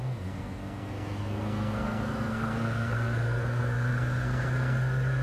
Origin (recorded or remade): remade